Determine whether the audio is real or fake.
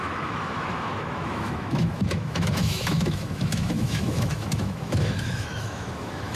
fake